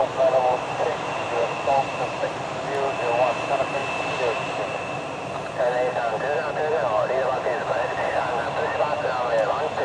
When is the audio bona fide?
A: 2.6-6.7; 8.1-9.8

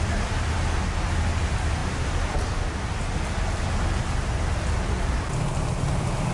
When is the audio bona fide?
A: 0.0-5.5

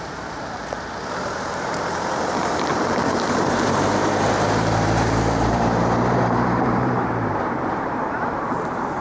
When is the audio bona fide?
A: 2.7-3.3

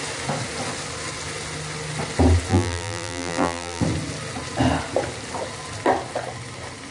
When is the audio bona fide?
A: 0.0-2.5; 3.8-6.9

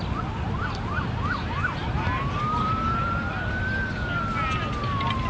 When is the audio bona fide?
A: 0.0-1.8; 4.7-5.3

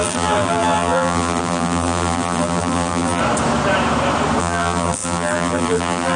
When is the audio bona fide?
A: 3.2-4.4